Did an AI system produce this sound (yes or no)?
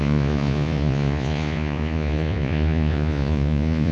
yes